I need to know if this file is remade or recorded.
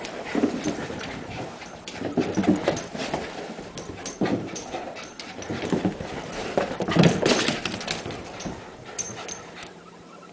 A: remade